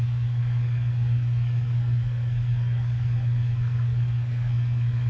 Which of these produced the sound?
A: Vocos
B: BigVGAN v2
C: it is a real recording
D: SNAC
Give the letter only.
D